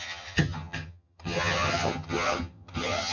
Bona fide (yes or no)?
no